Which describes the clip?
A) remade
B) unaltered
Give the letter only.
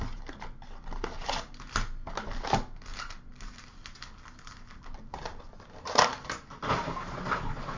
B